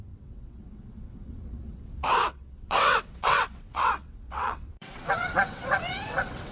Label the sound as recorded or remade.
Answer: remade